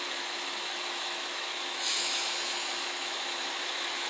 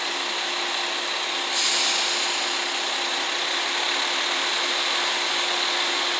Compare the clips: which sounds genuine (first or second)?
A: second